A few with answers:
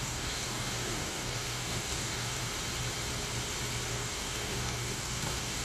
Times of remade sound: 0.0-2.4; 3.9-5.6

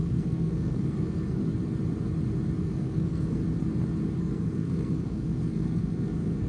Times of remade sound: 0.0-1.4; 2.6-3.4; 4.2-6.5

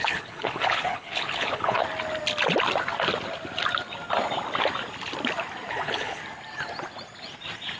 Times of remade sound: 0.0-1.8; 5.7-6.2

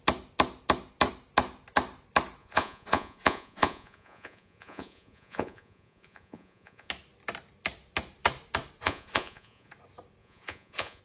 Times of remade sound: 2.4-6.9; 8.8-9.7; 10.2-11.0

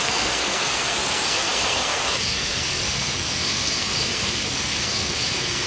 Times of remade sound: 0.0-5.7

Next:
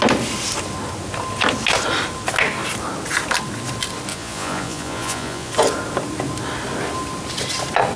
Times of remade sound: 4.1-5.5

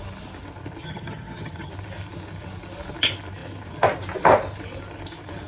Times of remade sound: 0.8-1.7